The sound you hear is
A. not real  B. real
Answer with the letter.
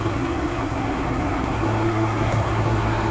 A